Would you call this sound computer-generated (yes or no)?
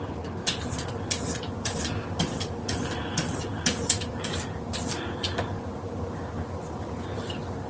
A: no